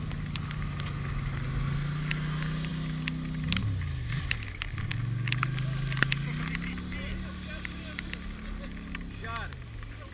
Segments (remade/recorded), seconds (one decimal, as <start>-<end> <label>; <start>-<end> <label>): 0.0-10.1 recorded